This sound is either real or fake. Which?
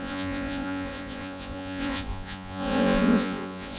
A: fake